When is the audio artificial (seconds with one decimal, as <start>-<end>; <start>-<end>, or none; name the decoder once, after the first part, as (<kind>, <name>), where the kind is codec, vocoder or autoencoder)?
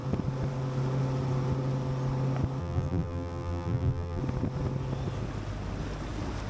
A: 2.6-4.2 (vocoder, BigVGAN v2)